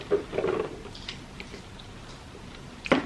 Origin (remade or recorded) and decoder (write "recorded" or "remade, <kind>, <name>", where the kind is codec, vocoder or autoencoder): recorded